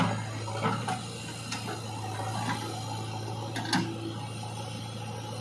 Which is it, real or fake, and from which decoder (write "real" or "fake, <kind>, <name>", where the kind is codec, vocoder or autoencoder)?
real